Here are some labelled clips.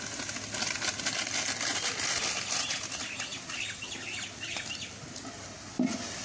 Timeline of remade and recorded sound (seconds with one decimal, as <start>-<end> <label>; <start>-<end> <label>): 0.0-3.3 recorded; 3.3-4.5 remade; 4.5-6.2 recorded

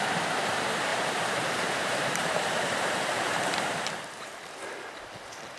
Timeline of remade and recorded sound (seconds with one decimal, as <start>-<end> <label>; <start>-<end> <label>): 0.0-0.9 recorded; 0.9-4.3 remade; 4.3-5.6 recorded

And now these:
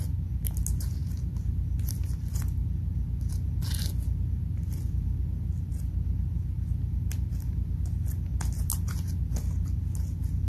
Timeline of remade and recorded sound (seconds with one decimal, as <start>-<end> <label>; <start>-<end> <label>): 0.0-10.5 recorded